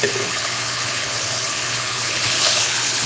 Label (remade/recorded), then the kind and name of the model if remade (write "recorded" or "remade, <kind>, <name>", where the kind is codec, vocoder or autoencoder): remade, codec, HILCodec